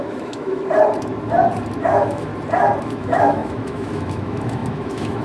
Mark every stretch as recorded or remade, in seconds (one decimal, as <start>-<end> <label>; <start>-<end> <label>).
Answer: 0.0-0.6 remade; 0.6-1.8 recorded; 1.8-2.3 remade; 2.3-2.8 recorded; 2.8-5.2 remade

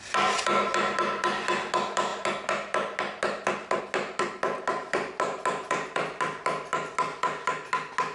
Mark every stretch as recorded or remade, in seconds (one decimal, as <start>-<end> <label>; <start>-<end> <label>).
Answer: 0.0-8.1 recorded

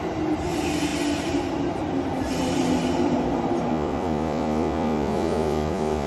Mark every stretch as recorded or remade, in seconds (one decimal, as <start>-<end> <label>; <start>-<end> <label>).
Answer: 0.0-3.7 recorded; 3.7-6.1 remade